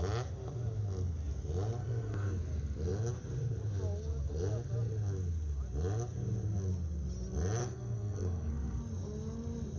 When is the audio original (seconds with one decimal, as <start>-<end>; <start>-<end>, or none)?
0.0-1.8; 2.4-7.6; 8.8-9.8